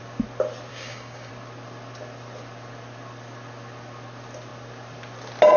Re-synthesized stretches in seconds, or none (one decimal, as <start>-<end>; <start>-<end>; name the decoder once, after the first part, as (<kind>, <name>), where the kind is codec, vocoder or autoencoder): 0.7-1.3 (codec, DAC)